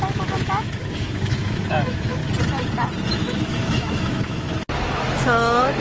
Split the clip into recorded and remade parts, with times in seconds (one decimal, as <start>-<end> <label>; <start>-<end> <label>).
0.0-2.2 remade; 2.2-3.1 recorded; 3.1-5.8 remade

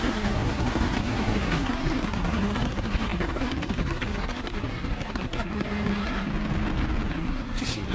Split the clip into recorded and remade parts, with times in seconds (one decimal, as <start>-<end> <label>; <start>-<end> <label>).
0.0-6.3 remade; 6.3-7.1 recorded; 7.1-7.9 remade

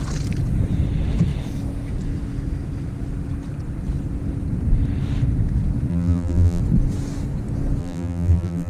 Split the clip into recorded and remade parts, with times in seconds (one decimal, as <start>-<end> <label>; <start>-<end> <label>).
0.0-5.9 recorded; 5.9-6.6 remade; 6.6-7.8 recorded; 7.8-8.7 remade

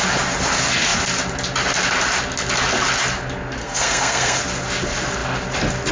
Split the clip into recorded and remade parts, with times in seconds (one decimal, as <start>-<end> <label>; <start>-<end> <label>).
0.0-3.6 recorded; 3.6-4.4 remade; 4.4-5.9 recorded

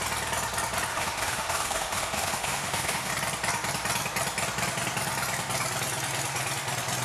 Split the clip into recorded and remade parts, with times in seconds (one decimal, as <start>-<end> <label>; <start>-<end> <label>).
0.0-0.9 recorded; 0.9-3.1 remade; 3.1-7.0 recorded